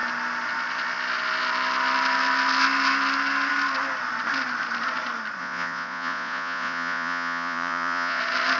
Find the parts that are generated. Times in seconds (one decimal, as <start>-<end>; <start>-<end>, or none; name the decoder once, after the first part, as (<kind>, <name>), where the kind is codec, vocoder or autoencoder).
5.4-8.2 (vocoder, Vocos)